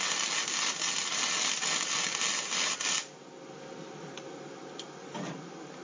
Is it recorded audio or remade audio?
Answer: recorded